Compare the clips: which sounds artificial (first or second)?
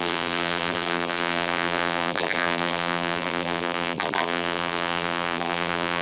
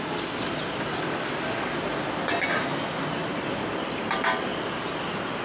first